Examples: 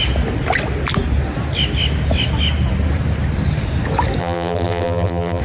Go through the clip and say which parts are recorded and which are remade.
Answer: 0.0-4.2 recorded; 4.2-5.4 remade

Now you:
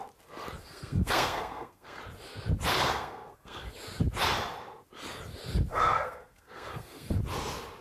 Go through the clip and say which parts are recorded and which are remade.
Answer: 0.0-0.6 recorded; 0.6-2.0 remade; 2.0-2.7 recorded; 2.7-3.7 remade; 3.7-5.7 recorded; 5.7-7.1 remade; 7.1-7.8 recorded

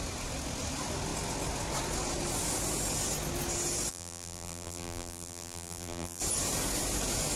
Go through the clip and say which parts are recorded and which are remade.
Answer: 0.0-3.9 recorded; 3.9-6.2 remade; 6.2-7.4 recorded

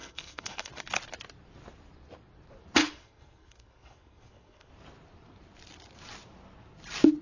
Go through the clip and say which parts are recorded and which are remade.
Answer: 0.0-0.7 remade; 0.7-2.8 recorded; 2.8-4.7 remade; 4.7-7.2 recorded

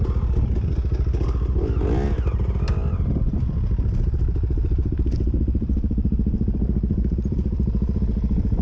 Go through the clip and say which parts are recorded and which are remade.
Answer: 0.0-2.8 recorded; 2.8-8.0 remade; 8.0-8.6 recorded

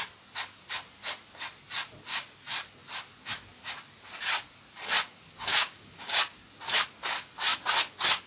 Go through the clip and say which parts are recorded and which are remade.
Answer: 0.0-5.5 recorded; 5.5-6.2 remade; 6.2-8.3 recorded

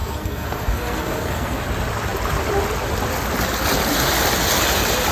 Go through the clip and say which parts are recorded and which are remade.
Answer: 0.0-1.6 remade; 1.6-5.1 recorded